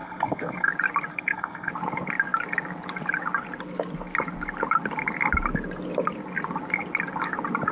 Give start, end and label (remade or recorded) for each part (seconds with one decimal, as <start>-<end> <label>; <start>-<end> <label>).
0.0-0.7 remade; 0.7-1.1 recorded; 1.1-1.7 remade; 1.7-7.7 recorded